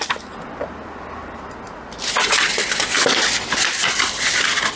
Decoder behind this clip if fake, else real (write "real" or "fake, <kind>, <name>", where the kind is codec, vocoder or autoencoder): real